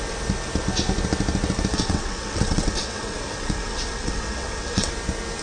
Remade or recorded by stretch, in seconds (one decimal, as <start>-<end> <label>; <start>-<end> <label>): 0.0-1.7 recorded; 1.7-4.9 remade; 4.9-5.4 recorded